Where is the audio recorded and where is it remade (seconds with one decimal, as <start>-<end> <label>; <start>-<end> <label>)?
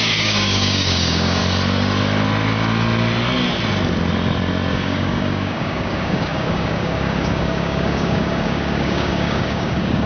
0.0-1.4 remade; 1.4-4.7 recorded; 4.7-10.1 remade